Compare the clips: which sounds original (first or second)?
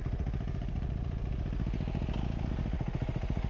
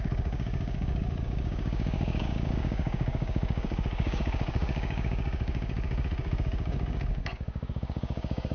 first